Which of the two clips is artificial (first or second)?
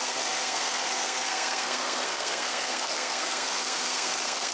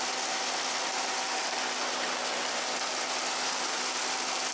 first